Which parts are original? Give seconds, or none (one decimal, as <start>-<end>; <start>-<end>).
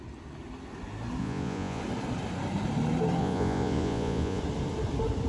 0.0-1.2; 1.8-3.2; 4.4-5.3